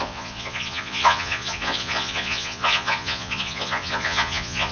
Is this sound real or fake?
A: fake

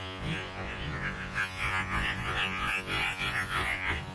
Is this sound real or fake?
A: fake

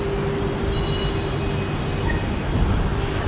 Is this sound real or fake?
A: real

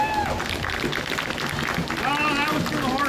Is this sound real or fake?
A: real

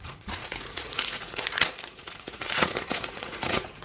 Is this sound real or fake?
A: fake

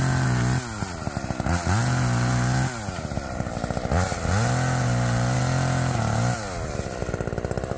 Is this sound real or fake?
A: real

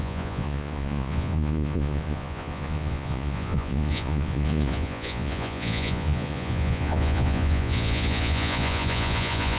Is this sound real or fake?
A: fake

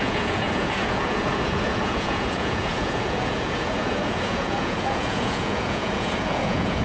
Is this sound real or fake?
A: fake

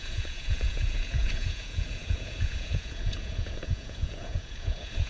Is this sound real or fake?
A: fake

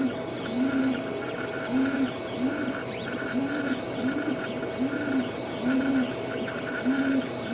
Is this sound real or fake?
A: real